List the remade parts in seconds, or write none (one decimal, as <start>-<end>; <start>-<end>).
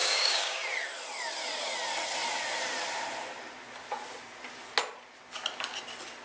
0.0-0.6